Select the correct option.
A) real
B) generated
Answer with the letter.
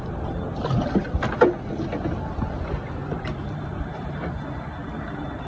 B